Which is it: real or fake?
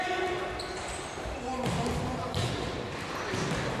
real